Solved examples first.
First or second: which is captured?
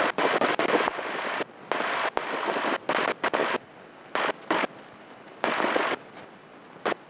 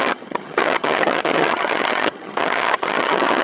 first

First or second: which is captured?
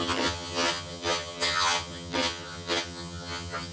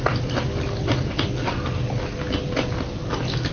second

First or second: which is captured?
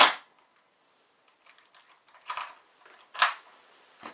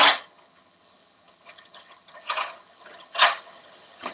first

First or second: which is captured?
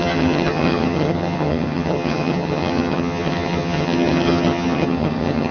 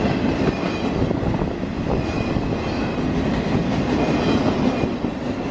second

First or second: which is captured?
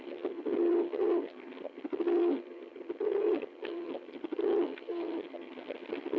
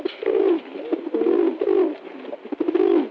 second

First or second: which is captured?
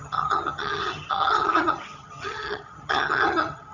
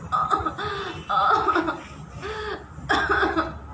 second